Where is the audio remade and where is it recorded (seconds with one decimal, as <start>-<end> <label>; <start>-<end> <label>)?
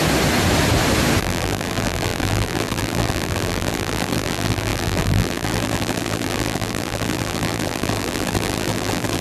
0.0-1.2 recorded; 1.2-9.2 remade